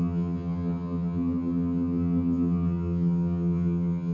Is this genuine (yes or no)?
no